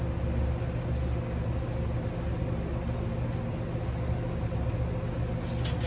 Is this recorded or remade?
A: recorded